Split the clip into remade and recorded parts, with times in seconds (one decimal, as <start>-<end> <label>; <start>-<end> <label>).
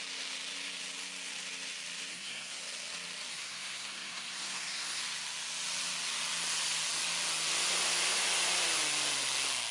0.0-2.1 recorded; 2.1-2.6 remade; 2.6-3.3 recorded; 3.3-5.0 remade; 5.0-9.7 recorded